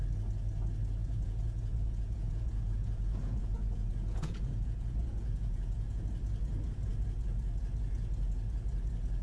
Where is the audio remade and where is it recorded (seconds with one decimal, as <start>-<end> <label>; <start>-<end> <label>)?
0.0-1.0 recorded; 1.0-6.0 remade; 6.0-9.2 recorded